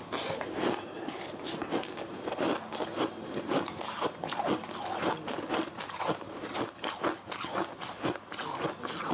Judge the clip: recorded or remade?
recorded